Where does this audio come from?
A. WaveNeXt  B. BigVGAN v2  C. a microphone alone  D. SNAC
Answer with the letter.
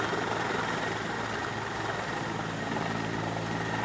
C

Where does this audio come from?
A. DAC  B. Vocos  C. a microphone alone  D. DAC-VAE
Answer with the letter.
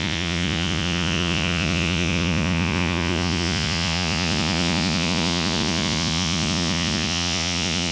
B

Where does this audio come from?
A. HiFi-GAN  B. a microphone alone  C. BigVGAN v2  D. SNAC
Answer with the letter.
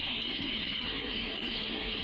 D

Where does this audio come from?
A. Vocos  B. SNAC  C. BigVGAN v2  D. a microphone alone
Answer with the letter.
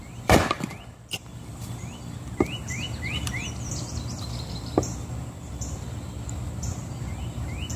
C